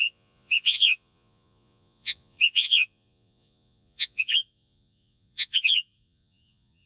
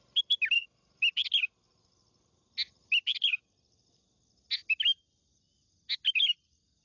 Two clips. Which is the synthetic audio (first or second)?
first